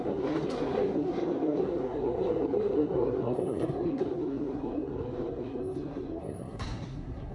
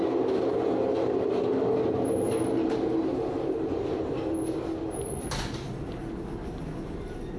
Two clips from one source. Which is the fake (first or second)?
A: first